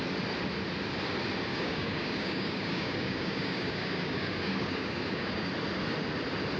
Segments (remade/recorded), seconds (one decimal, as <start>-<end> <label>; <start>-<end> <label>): 0.0-1.5 recorded; 1.5-5.5 remade; 5.5-6.6 recorded